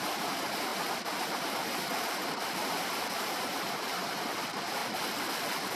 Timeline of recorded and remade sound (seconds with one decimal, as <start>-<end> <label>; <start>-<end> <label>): 0.0-0.7 remade; 0.7-3.1 recorded; 3.1-4.8 remade; 4.8-5.8 recorded